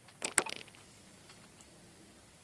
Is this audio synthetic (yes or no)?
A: no